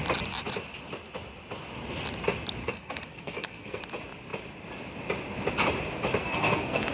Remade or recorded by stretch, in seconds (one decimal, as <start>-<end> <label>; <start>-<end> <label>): 0.0-2.6 recorded; 2.6-3.8 remade; 3.8-6.2 recorded; 6.2-6.9 remade